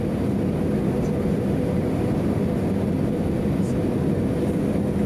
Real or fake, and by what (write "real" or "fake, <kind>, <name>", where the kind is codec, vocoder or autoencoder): real